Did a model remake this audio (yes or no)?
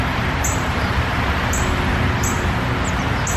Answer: no